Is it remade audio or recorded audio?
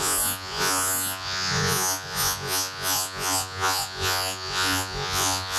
remade